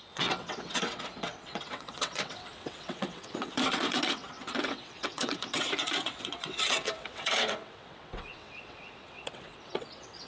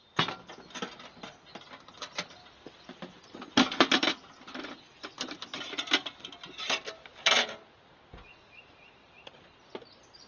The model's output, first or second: first